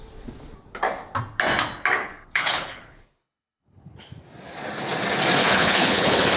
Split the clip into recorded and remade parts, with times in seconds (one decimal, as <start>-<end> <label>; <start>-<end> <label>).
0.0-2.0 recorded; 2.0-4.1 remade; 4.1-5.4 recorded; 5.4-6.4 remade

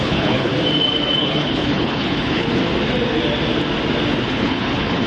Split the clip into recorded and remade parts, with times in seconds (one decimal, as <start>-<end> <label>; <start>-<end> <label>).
0.0-0.5 remade; 0.5-1.2 recorded; 1.2-2.6 remade; 2.6-4.3 recorded; 4.3-5.1 remade

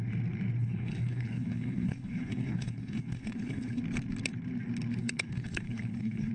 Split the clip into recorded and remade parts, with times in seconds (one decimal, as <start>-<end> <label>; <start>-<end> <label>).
0.0-0.6 recorded; 0.6-3.8 remade; 3.8-5.0 recorded; 5.0-6.3 remade

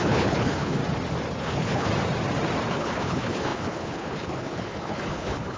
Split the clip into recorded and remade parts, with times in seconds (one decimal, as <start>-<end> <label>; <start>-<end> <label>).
0.0-0.8 remade; 0.8-1.4 recorded; 1.4-1.9 remade; 1.9-2.7 recorded; 2.7-5.6 remade

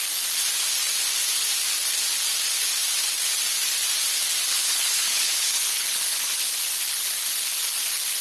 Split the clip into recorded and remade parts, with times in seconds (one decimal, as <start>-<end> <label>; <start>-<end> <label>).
0.0-4.5 recorded; 4.5-6.5 remade; 6.5-8.2 recorded

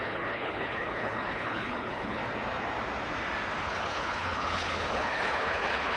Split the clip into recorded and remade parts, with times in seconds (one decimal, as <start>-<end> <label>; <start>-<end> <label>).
0.0-2.2 remade; 2.2-3.6 recorded; 3.6-6.0 remade

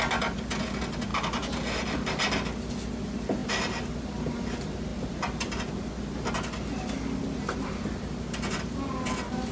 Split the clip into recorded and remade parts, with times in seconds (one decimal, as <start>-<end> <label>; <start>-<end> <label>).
0.0-9.5 recorded

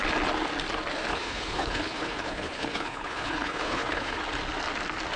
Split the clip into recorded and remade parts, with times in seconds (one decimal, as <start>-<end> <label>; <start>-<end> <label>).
0.0-1.1 recorded; 1.1-4.2 remade; 4.2-5.2 recorded